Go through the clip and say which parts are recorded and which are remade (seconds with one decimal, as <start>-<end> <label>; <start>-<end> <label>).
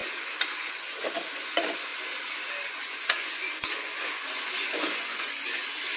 0.0-0.6 recorded; 0.6-1.9 remade; 1.9-2.7 recorded; 2.7-6.0 remade